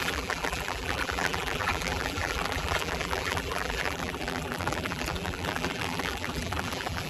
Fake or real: fake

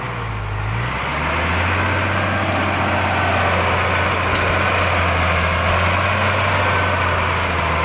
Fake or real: real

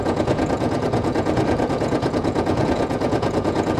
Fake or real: fake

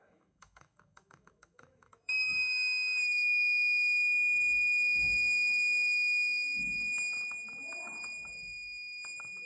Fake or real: fake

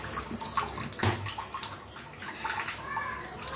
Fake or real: real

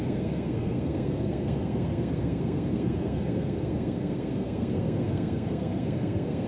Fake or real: fake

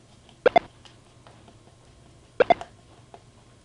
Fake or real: real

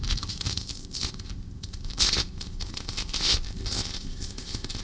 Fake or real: fake